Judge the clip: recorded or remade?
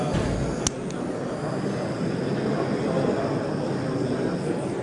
recorded